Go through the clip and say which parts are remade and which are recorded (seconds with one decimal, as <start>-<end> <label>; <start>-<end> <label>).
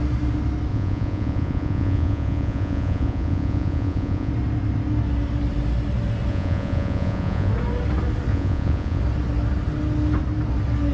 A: 0.0-0.7 recorded; 0.7-4.3 remade; 4.3-6.3 recorded; 6.3-7.5 remade; 7.5-8.3 recorded; 8.3-9.0 remade; 9.0-10.9 recorded